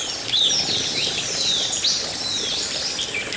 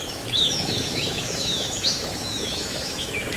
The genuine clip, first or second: first